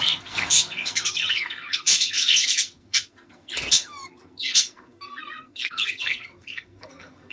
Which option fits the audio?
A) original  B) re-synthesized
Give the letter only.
B